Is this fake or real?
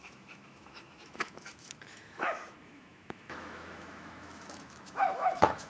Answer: fake